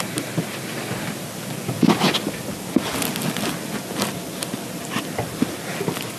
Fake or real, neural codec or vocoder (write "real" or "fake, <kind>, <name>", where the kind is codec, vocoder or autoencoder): real